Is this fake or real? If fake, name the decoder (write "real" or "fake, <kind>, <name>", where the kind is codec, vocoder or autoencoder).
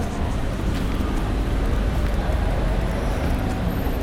fake, vocoder, BigVGAN v2